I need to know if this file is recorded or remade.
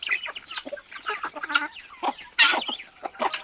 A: recorded